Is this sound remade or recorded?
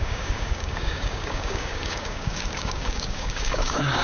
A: remade